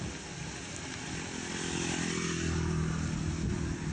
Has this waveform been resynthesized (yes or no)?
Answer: no